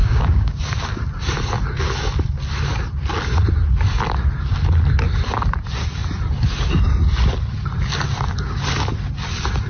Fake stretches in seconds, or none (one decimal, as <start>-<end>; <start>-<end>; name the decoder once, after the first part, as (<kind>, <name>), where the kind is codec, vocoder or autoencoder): 0.0-0.6 (codec, DAC)